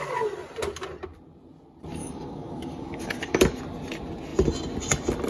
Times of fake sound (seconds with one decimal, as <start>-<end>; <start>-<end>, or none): 2.0-3.6